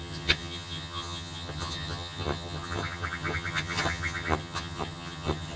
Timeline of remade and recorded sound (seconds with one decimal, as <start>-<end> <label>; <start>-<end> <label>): 0.0-5.6 remade